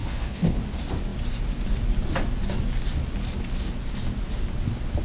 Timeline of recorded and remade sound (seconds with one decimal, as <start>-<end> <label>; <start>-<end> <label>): 0.0-0.6 remade; 0.6-5.0 recorded